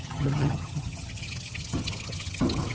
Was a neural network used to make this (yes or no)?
yes